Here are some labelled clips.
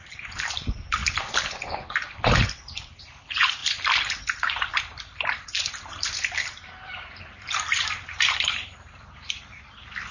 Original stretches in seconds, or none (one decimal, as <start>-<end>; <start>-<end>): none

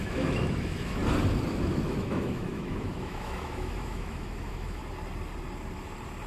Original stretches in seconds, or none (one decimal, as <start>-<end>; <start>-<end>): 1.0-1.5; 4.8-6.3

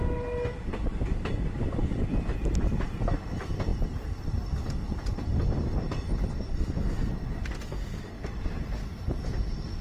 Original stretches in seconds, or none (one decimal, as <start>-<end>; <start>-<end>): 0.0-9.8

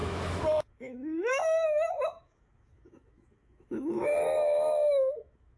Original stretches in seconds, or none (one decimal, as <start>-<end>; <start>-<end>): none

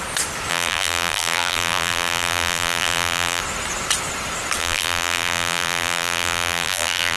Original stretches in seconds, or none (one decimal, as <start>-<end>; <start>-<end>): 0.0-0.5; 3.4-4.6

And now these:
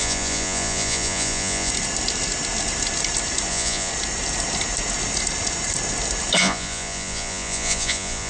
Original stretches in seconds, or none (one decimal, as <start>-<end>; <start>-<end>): 1.7-3.5; 3.9-6.4

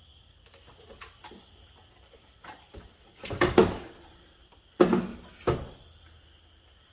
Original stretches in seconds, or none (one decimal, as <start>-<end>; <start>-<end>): 0.0-6.9